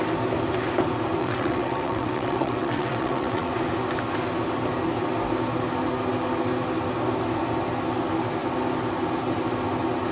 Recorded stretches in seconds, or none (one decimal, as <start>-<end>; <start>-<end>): 0.0-1.2; 3.5-10.1